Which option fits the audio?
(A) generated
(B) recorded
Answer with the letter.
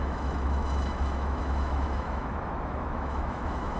A